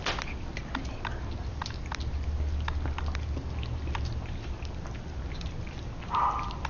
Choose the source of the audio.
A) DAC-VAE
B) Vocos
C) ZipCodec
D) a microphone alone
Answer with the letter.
D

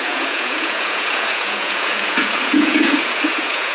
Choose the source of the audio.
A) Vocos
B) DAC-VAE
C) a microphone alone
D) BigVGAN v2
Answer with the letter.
A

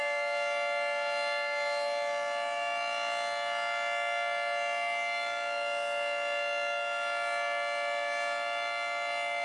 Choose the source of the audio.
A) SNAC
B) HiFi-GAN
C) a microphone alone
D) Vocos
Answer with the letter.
C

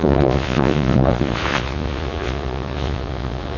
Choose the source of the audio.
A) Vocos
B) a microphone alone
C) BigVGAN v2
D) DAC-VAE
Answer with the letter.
A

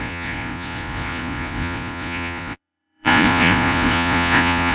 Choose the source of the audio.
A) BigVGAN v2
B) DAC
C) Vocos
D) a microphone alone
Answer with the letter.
C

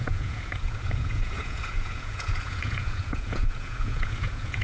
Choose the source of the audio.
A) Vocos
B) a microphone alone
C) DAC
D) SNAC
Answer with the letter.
A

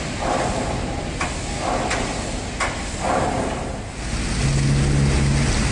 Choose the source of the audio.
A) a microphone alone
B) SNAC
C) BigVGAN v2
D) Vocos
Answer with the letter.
A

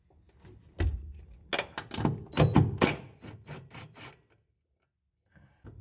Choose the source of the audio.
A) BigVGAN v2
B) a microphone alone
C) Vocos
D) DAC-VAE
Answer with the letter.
B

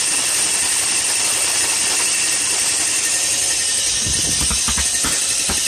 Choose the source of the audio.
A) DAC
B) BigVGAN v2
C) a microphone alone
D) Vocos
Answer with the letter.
C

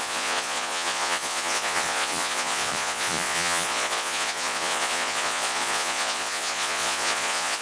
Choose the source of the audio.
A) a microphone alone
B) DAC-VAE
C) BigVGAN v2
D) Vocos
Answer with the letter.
D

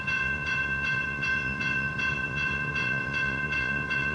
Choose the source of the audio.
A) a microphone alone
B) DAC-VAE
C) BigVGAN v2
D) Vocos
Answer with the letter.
D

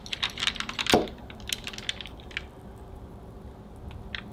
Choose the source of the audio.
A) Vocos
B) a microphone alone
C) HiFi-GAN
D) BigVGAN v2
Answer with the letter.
B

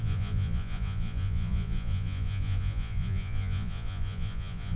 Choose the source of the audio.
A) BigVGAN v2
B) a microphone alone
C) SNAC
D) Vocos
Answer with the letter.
D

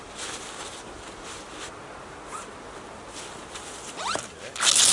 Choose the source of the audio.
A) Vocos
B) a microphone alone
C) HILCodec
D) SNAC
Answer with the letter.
B